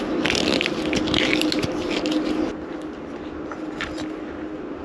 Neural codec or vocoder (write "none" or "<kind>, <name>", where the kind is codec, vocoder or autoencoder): none